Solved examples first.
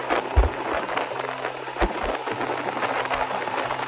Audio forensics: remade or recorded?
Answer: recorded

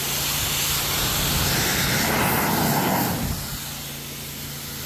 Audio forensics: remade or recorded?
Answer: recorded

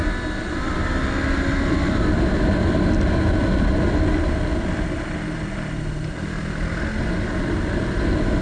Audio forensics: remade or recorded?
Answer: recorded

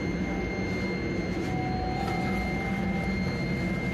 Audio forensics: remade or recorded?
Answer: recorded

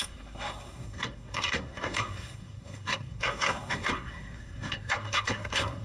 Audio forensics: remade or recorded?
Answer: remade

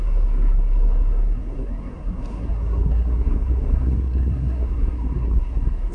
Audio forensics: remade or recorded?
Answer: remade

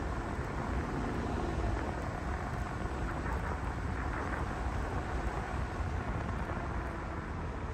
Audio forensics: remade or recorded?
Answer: recorded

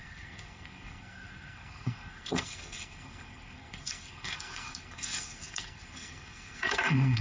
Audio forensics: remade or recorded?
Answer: remade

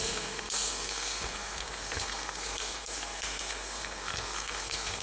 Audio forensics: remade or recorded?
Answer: remade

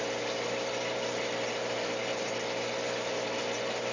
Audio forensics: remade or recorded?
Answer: recorded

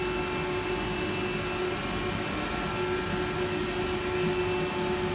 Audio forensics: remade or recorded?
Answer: recorded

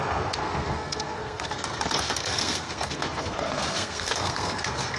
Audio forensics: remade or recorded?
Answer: remade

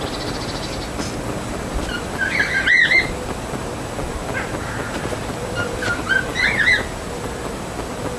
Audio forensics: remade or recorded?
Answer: recorded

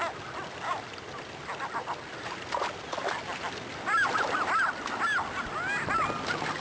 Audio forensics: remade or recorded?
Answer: recorded